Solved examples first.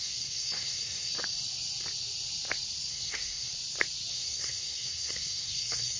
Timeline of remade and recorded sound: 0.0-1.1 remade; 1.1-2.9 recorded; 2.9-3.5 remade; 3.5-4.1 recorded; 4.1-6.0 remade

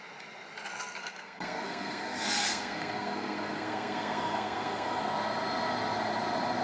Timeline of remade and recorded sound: 0.0-1.0 recorded; 1.0-5.0 remade; 5.0-6.6 recorded

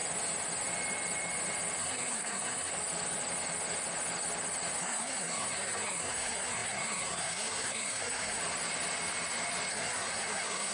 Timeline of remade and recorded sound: 0.0-1.8 recorded; 1.8-2.7 remade; 2.7-4.8 recorded; 4.8-8.4 remade; 8.4-9.7 recorded; 9.7-10.7 remade

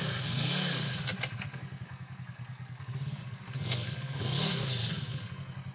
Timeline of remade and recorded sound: 0.0-0.7 remade; 0.7-1.4 recorded; 1.4-5.7 remade

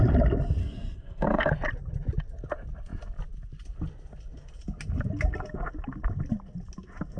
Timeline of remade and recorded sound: 0.0-0.6 recorded; 0.6-1.5 remade; 1.5-7.2 recorded

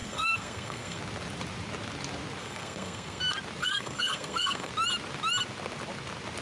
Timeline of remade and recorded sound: 0.0-1.0 remade; 1.0-2.4 recorded; 2.4-3.2 remade; 3.2-3.6 recorded; 3.6-4.7 remade; 4.7-6.4 recorded

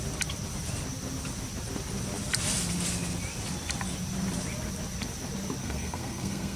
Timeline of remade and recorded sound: 0.0-5.6 recorded; 5.6-6.6 remade